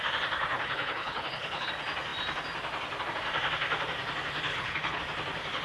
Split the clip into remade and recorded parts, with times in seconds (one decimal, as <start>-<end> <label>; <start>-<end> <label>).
0.0-0.5 recorded; 0.5-1.7 remade; 1.7-4.5 recorded; 4.5-5.0 remade; 5.0-5.6 recorded